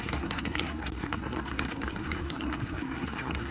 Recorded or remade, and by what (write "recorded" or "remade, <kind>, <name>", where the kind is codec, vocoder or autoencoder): remade, codec, SNAC